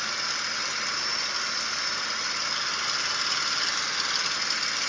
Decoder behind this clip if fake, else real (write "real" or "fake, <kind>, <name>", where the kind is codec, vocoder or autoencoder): real